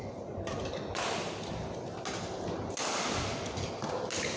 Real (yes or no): yes